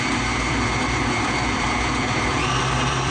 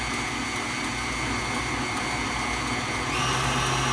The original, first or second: second